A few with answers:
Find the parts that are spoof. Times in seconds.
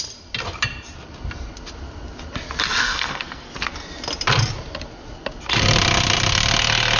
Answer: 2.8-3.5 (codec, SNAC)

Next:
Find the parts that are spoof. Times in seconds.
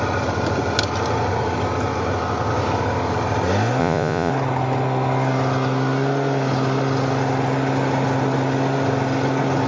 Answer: 3.8-4.3 (vocoder, Vocos)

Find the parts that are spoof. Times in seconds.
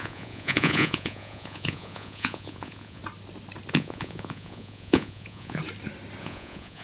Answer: 0.0-3.0 (vocoder, Vocos); 3.7-5.6; 6.2-6.8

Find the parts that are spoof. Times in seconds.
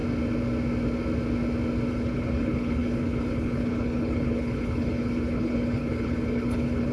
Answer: 1.9-6.9 (codec, HILCodec)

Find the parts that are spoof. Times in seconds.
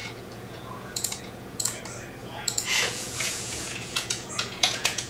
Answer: 0.0-1.8 (vocoder, Vocos); 2.2-5.1